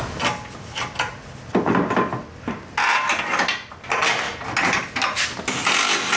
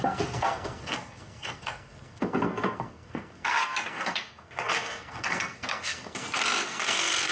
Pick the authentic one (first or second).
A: first